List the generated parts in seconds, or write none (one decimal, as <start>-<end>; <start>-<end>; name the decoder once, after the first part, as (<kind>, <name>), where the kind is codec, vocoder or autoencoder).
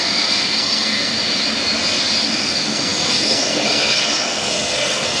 0.0-1.2 (codec, SNAC); 2.2-5.2